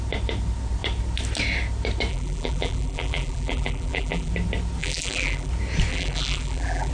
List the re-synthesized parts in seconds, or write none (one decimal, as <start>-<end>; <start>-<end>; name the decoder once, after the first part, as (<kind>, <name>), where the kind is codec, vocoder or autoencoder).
2.1-4.3 (vocoder, BigVGAN v2); 4.8-5.5; 5.9-6.9

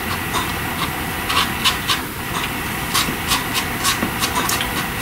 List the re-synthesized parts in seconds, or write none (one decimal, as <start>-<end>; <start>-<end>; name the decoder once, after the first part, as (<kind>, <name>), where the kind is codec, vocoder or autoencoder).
none

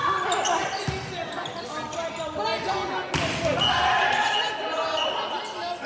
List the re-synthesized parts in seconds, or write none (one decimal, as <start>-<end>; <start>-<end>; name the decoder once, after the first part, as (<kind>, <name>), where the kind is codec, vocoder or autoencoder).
none

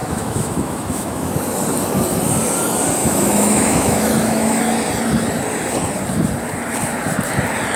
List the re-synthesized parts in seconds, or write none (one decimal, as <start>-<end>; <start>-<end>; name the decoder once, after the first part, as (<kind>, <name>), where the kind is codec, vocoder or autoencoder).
0.0-1.3 (autoencoder, DAC-VAE); 3.0-4.6

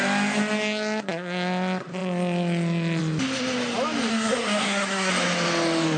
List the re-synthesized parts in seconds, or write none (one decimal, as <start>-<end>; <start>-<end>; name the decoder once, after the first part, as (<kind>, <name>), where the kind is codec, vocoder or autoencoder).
4.1-5.1 (codec, SNAC)

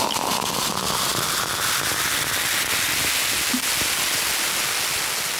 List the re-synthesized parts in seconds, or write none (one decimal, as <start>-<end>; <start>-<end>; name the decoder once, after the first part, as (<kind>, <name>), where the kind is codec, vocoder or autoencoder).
none

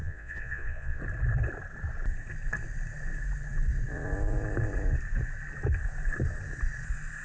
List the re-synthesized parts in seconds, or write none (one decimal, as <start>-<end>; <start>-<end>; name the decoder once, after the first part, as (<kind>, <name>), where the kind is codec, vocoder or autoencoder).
0.0-1.0 (vocoder, Vocos)